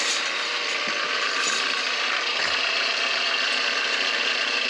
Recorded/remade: recorded